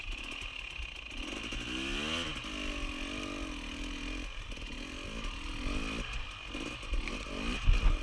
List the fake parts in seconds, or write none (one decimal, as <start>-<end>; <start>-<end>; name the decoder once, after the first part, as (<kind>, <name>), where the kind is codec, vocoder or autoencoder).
none